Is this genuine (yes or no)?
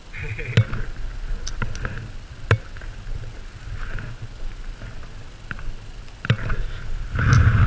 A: yes